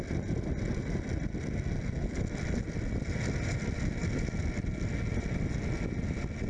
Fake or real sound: real